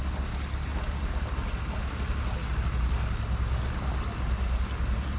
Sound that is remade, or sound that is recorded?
recorded